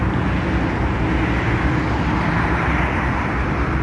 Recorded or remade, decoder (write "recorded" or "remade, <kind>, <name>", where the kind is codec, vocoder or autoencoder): recorded